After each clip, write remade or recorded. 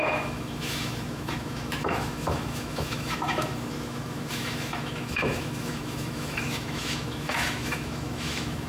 remade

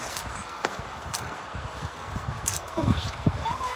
remade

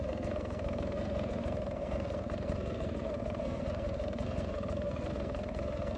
remade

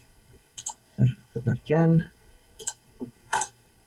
remade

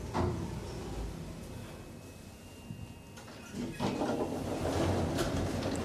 recorded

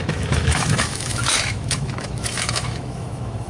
remade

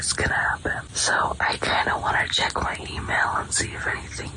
recorded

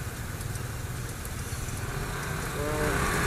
recorded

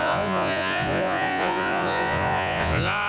remade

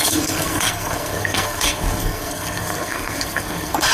remade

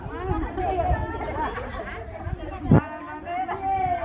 recorded